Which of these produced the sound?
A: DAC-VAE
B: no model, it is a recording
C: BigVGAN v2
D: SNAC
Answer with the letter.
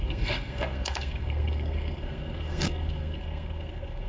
D